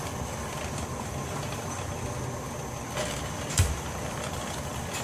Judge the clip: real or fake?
real